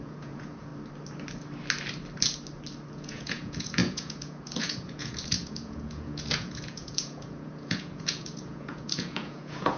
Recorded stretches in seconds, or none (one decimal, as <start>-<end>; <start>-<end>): 0.7-2.9